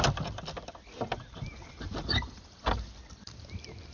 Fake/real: real